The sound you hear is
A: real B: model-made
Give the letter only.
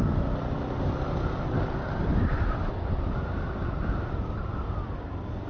A